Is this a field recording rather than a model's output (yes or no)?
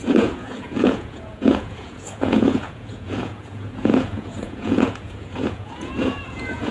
no